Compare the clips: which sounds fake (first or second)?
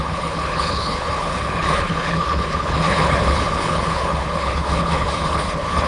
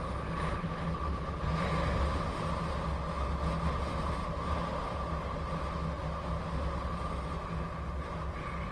first